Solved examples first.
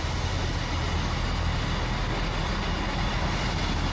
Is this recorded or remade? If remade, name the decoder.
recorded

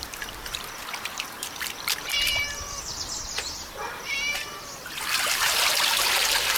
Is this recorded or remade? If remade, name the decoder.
remade, vocoder, BigVGAN v2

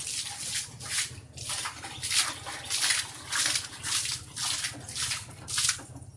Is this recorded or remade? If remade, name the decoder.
recorded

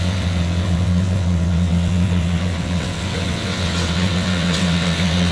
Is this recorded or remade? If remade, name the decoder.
remade, vocoder, WaveNeXt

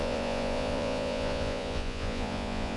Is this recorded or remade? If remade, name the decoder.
remade, vocoder, Vocos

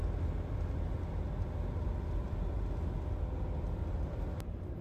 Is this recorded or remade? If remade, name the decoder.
recorded